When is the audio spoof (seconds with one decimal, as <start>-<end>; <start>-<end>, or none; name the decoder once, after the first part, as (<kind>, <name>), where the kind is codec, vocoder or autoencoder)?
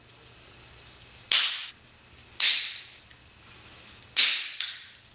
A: none